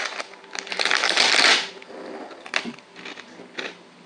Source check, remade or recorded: recorded